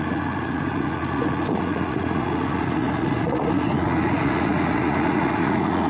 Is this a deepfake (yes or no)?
yes